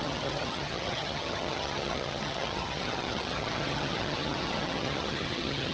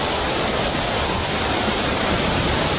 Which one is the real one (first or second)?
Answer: second